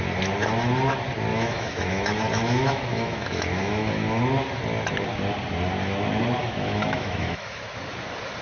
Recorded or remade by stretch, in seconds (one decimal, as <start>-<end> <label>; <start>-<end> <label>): 0.0-1.3 recorded; 1.3-4.2 remade; 4.2-6.4 recorded; 6.4-7.6 remade; 7.6-8.4 recorded

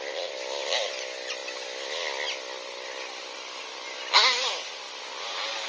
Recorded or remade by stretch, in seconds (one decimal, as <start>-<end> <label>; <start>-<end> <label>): 0.0-5.7 recorded

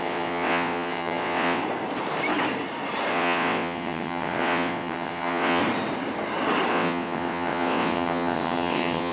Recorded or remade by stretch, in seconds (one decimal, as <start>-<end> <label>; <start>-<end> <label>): 0.0-1.6 remade; 1.6-3.1 recorded; 3.1-5.6 remade; 5.6-6.7 recorded; 6.7-9.1 remade